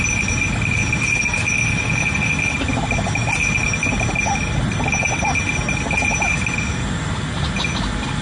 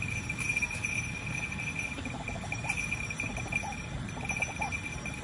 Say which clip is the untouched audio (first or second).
first